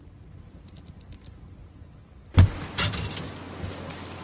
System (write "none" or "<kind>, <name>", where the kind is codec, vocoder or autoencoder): none